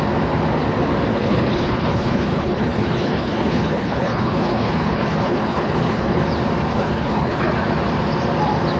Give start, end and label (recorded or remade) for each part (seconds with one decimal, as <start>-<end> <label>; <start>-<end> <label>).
0.0-1.1 recorded; 1.1-6.2 remade; 6.2-6.7 recorded; 6.7-7.5 remade; 7.5-8.8 recorded